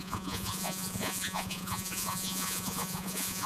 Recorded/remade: remade